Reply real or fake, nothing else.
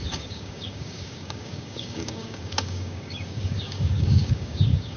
fake